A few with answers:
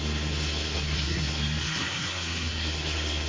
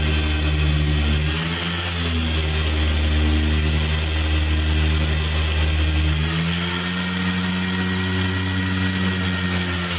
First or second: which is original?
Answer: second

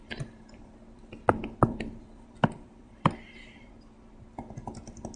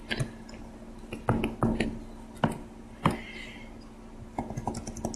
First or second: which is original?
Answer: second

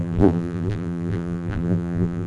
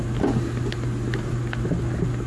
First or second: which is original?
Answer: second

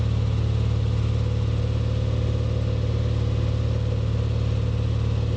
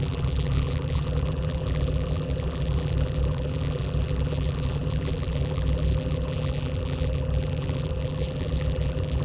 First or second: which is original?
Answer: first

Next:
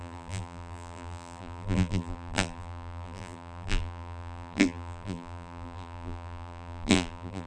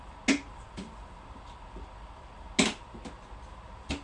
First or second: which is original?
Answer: second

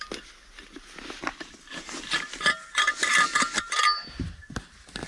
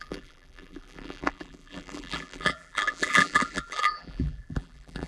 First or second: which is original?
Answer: first